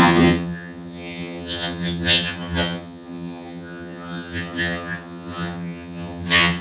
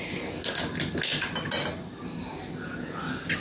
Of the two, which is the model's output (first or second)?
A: first